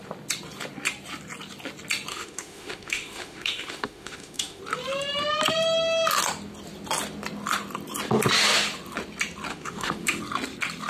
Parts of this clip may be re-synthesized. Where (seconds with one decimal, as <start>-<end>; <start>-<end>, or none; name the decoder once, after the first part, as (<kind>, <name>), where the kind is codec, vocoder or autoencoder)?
2.1-4.6 (autoencoder, DAC-VAE); 9.5-10.2